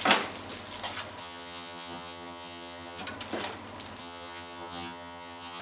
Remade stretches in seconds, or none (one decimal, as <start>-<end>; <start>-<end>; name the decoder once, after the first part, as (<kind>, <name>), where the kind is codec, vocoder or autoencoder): 1.2-3.0 (vocoder, HiFi-GAN); 4.0-5.6